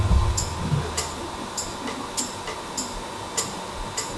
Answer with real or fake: real